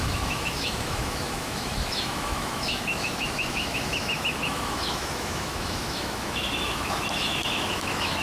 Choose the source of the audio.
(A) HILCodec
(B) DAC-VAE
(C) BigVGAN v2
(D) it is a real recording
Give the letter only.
B